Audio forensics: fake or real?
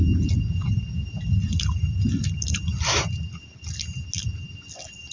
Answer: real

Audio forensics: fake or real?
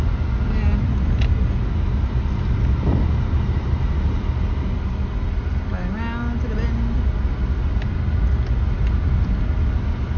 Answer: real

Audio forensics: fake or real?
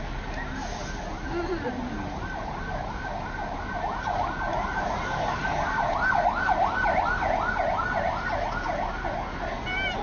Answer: real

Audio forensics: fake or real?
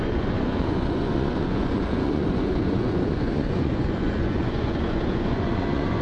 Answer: fake